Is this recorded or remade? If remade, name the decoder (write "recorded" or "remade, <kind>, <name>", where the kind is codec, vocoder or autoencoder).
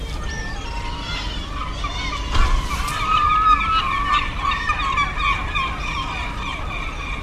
remade, vocoder, BigVGAN v2